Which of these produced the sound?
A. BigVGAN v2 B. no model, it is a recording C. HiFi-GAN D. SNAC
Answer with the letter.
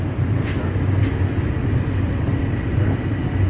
B